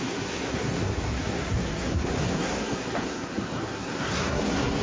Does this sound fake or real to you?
fake